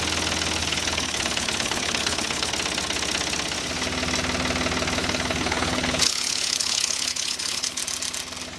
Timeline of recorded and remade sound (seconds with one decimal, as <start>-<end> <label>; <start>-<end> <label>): 0.0-0.6 recorded; 0.6-2.5 remade; 2.5-5.0 recorded; 5.0-7.8 remade; 7.8-8.6 recorded

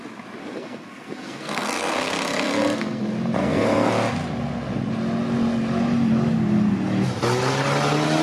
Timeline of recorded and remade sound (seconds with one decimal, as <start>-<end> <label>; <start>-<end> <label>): 0.0-0.4 recorded; 0.4-3.0 remade; 3.0-3.4 recorded; 3.4-3.9 remade; 3.9-8.2 recorded

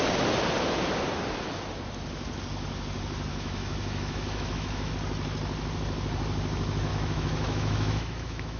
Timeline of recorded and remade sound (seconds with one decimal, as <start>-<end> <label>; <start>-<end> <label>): 0.0-3.3 recorded; 3.3-4.9 remade; 4.9-6.9 recorded; 6.9-8.6 remade